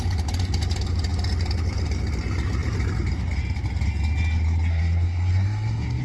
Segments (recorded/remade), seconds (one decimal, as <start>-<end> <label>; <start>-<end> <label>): 0.0-4.7 recorded; 4.7-6.0 remade